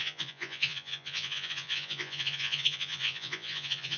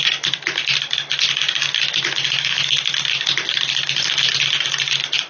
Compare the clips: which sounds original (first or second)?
second